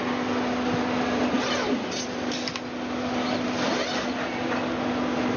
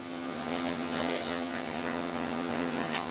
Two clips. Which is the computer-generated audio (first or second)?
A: second